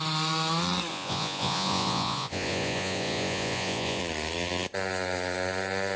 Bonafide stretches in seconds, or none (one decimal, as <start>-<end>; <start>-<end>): 0.0-0.9; 4.0-6.0